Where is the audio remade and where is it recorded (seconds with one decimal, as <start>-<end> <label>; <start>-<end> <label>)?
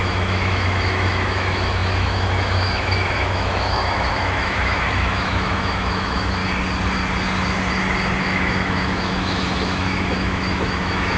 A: 0.0-6.4 remade; 6.4-8.2 recorded; 8.2-11.2 remade